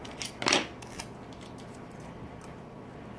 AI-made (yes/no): no